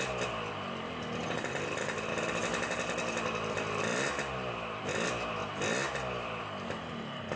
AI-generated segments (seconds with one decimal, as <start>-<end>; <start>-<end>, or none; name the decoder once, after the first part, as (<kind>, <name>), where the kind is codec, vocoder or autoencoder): none